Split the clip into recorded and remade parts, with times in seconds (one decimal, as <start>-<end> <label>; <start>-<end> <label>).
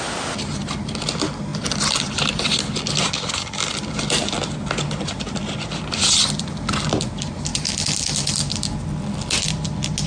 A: 0.0-10.1 recorded